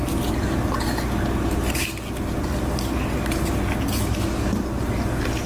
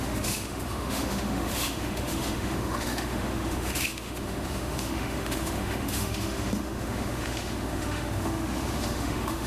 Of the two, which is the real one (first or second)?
first